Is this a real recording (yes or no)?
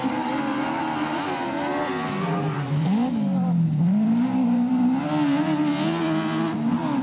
yes